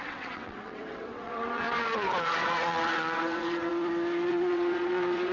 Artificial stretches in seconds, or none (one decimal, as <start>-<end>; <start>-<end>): 0.0-3.7; 4.3-5.3